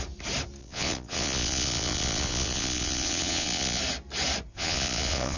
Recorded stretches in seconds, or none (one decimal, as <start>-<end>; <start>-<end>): 0.0-0.6; 3.8-4.5